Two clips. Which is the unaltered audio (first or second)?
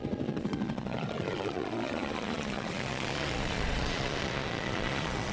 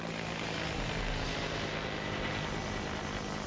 second